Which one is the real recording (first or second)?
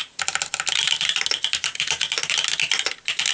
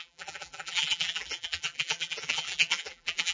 first